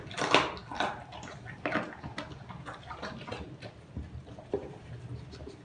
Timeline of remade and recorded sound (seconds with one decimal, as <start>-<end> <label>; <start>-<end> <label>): 0.0-4.2 recorded; 4.2-5.6 remade